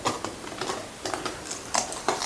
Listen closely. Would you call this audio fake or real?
real